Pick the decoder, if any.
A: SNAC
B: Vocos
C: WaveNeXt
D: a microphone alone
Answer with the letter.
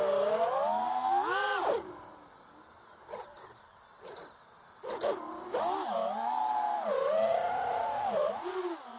D